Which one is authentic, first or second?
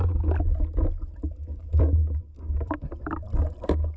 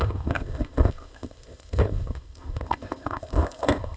first